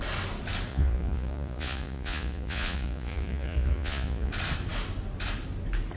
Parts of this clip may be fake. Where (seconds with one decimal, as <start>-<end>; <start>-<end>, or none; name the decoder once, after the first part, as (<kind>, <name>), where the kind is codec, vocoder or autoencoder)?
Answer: 0.7-4.3 (vocoder, Vocos)